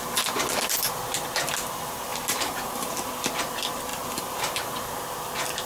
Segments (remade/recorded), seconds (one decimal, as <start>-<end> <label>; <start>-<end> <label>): 0.0-2.1 recorded; 2.1-3.2 remade; 3.2-3.9 recorded; 3.9-5.0 remade; 5.0-5.7 recorded